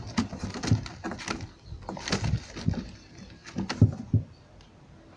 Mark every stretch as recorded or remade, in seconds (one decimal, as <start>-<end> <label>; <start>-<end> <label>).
0.0-5.2 recorded